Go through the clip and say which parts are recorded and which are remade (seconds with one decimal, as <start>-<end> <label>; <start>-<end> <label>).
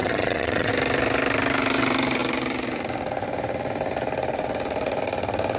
0.0-0.7 remade; 0.7-5.6 recorded